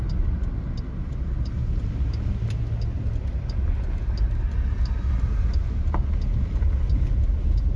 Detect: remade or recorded recorded